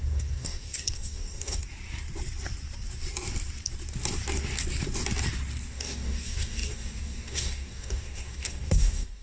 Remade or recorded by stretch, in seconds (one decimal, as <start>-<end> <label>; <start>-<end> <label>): 0.0-1.6 remade; 1.6-5.7 recorded; 5.7-9.2 remade